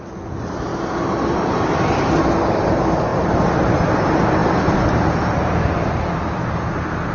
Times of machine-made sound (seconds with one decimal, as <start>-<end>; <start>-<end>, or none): 3.1-3.8; 4.4-6.1